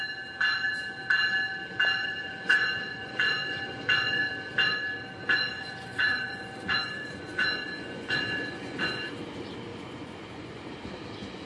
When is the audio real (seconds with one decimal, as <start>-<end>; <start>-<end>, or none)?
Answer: 0.0-2.0; 4.3-5.2; 9.1-9.7; 10.8-11.5